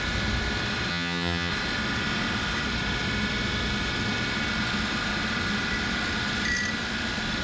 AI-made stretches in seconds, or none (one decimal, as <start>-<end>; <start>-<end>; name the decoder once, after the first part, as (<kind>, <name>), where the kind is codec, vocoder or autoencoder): 0.9-1.5 (vocoder, HiFi-GAN)